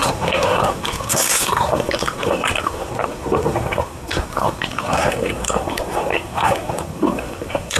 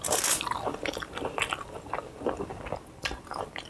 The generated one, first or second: first